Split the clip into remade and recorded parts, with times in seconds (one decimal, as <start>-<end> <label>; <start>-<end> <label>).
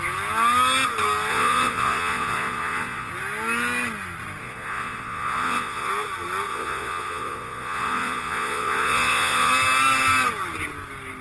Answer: 0.0-1.3 recorded; 1.3-3.1 remade; 3.1-4.4 recorded; 4.4-5.9 remade; 5.9-6.5 recorded; 6.5-9.5 remade; 9.5-11.2 recorded